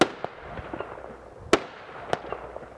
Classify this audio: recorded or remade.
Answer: recorded